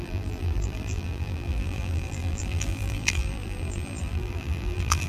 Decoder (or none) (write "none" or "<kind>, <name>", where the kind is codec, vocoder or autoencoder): vocoder, BigVGAN v2